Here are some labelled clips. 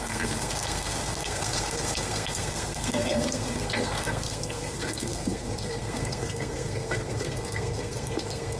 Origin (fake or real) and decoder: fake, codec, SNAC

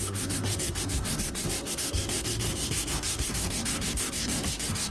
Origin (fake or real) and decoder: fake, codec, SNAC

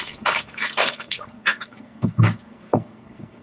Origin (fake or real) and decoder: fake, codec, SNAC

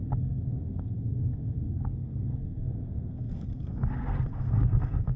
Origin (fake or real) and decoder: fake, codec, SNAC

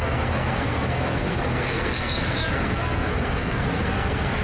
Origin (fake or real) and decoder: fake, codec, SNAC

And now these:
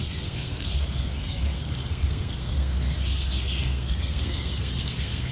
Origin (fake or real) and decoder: fake, codec, SNAC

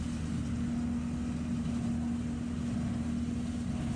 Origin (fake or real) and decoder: real